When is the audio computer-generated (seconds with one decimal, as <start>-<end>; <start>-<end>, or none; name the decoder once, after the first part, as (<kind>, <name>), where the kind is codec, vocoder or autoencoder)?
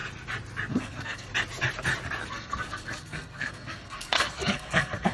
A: 0.7-1.3 (codec, SNAC); 2.3-5.1